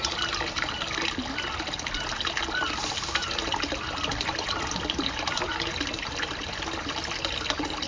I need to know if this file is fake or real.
real